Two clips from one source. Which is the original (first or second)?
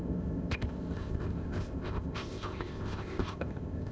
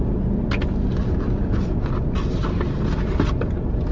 second